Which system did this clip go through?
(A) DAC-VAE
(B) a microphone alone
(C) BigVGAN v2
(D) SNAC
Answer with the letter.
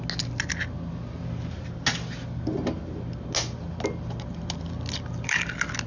B